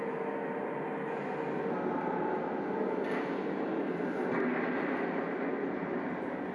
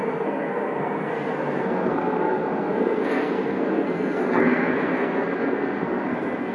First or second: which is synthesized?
second